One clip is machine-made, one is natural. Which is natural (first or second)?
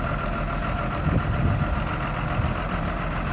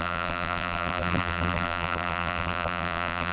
first